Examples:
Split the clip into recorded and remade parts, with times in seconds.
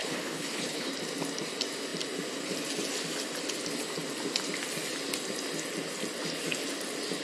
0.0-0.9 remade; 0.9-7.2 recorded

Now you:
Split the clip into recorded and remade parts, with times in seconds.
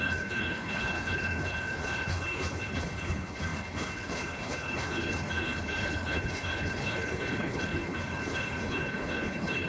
0.0-9.7 remade